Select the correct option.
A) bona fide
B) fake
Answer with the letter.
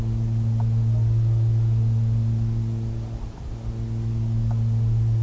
A